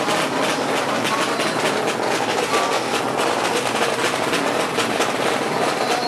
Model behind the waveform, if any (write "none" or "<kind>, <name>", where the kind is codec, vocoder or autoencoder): none